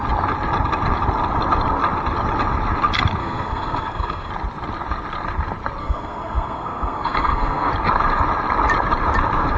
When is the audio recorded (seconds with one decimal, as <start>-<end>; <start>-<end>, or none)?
0.0-3.2; 4.3-5.8; 7.7-9.6